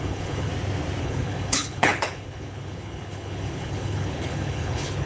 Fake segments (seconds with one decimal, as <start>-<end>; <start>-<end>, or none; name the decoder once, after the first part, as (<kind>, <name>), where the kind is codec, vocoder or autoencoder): 0.0-0.5 (codec, HILCodec); 1.0-5.1